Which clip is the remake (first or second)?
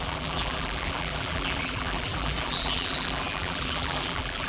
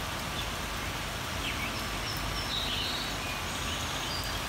first